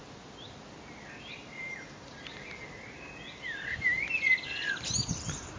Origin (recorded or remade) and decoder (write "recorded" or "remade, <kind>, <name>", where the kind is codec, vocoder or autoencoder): recorded